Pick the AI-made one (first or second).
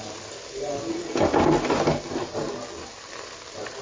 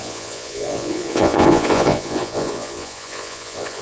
second